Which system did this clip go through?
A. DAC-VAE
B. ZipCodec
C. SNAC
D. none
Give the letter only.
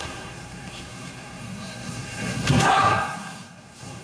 C